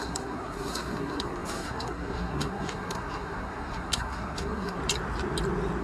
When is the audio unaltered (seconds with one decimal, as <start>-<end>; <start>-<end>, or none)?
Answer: 4.8-5.8